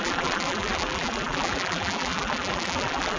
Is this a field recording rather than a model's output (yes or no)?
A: no